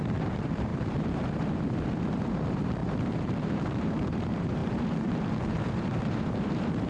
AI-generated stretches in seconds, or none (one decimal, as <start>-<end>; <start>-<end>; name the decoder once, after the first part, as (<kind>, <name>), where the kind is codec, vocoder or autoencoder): 0.0-6.9 (vocoder, BigVGAN v2)